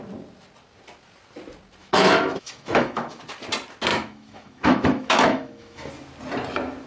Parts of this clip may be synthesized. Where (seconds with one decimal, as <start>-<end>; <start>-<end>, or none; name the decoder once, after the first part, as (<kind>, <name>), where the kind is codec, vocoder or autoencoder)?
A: 1.8-3.2 (autoencoder, DAC-VAE); 3.9-5.9